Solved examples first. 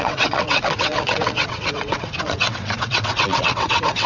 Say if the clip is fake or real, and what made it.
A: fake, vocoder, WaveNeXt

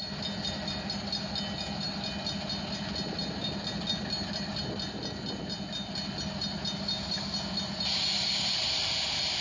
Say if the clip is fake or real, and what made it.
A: real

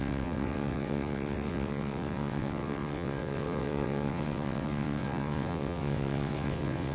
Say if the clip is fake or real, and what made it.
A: fake, vocoder, WaveNeXt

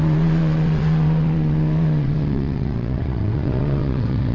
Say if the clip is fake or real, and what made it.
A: fake, vocoder, WaveNeXt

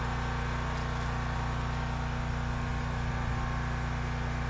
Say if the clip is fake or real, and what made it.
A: real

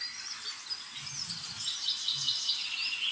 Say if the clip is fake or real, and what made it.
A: real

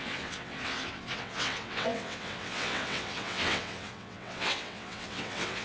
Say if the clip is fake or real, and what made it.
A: fake, vocoder, WaveNeXt